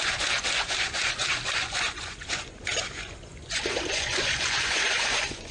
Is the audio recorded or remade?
remade